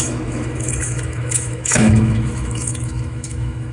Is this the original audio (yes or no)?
no